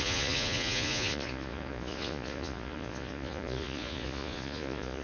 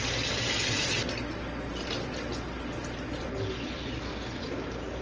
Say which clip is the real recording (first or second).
second